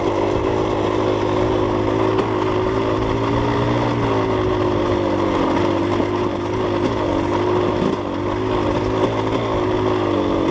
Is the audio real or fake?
real